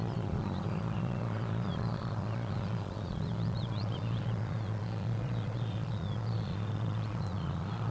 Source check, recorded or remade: remade